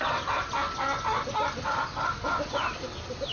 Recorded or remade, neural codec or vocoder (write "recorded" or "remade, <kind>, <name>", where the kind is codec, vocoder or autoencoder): recorded